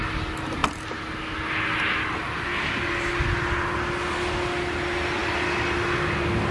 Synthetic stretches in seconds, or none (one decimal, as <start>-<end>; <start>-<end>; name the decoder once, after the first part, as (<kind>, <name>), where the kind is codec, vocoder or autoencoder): none